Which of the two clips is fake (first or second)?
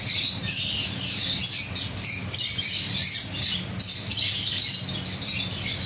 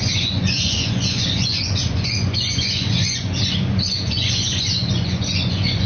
second